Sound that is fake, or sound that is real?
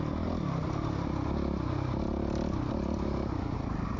real